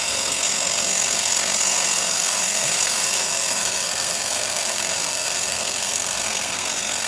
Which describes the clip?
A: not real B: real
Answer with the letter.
A